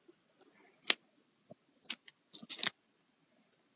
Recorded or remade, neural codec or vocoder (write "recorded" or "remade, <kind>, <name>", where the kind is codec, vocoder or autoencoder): recorded